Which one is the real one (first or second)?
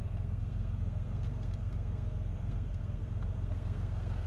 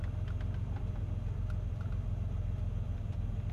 second